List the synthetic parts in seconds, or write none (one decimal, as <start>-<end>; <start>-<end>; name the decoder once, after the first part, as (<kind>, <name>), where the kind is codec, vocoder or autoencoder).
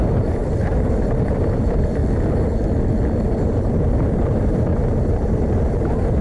0.0-2.0 (vocoder, BigVGAN v2); 3.3-4.7; 5.2-6.2